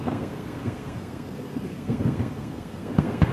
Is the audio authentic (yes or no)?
no